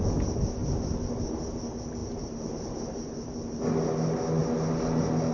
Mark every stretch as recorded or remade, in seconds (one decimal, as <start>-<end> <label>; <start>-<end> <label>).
0.0-0.6 recorded; 0.6-1.1 remade; 1.1-2.0 recorded; 2.0-3.6 remade; 3.6-5.3 recorded